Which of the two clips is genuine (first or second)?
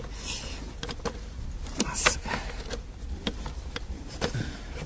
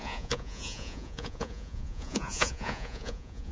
first